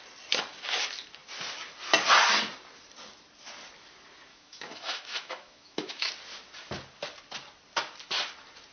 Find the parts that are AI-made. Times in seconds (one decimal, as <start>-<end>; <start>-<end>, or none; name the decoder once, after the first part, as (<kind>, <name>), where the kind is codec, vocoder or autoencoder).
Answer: 4.3-6.1 (autoencoder, DAC-VAE)